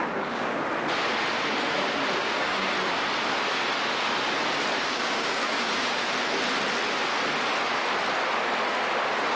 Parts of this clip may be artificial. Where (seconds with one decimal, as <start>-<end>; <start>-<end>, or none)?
0.0-0.6; 2.2-2.7; 4.8-6.1

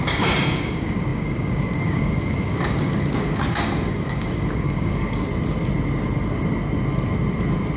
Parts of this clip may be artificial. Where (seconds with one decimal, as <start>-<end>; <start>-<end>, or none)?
0.0-5.3

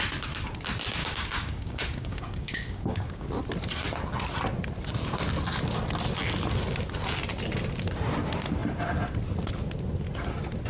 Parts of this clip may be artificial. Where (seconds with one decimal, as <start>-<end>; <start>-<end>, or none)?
1.0-3.3

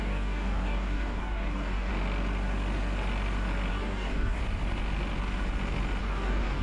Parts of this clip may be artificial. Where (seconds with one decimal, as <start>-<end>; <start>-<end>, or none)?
0.0-1.9; 3.7-4.4; 6.0-6.6

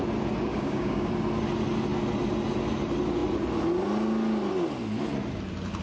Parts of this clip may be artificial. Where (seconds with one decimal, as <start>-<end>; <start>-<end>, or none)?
0.5-1.1

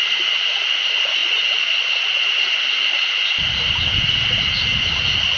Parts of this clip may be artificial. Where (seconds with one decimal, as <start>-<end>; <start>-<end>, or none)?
none

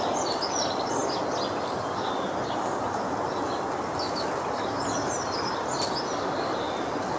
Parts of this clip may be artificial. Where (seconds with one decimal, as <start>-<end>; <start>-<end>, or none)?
none